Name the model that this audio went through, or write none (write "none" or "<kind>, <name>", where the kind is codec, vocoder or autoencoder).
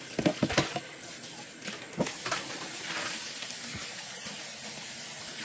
none